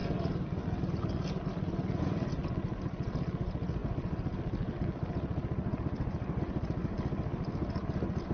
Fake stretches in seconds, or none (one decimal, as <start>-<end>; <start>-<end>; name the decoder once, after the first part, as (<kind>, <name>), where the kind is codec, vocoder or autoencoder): none